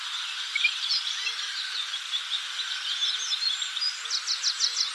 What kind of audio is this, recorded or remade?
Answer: recorded